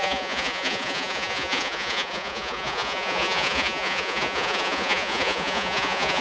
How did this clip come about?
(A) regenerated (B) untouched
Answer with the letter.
A